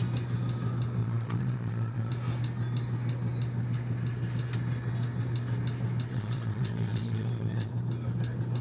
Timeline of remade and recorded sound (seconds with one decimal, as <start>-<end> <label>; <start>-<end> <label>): 0.0-1.0 recorded; 1.0-2.1 remade; 2.1-6.1 recorded; 6.1-7.7 remade; 7.7-8.6 recorded

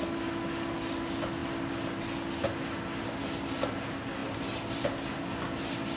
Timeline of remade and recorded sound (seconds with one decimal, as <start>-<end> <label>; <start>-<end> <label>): 0.0-6.0 recorded

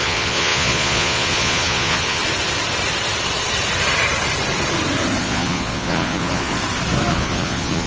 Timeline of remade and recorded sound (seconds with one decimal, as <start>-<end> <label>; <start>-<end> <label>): 0.0-2.2 remade; 2.2-5.2 recorded; 5.2-6.6 remade; 6.6-7.1 recorded; 7.1-7.9 remade

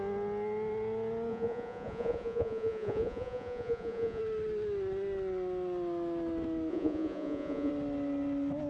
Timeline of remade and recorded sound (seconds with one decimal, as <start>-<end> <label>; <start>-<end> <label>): 0.0-1.3 recorded; 1.3-4.2 remade; 4.2-6.7 recorded; 6.7-7.7 remade; 7.7-8.7 recorded

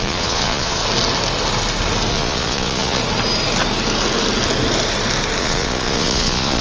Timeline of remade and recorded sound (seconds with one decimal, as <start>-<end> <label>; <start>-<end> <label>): 0.0-0.8 remade; 0.8-2.1 recorded; 2.1-3.0 remade; 3.0-5.4 recorded; 5.4-6.6 remade

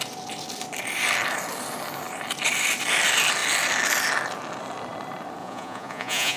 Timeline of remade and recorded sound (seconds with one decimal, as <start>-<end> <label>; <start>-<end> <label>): 0.0-5.4 recorded; 5.4-6.4 remade